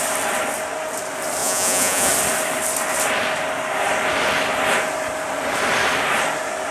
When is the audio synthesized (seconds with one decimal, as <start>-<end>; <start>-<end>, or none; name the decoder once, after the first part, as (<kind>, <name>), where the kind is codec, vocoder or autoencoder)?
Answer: 1.4-2.1 (vocoder, Vocos)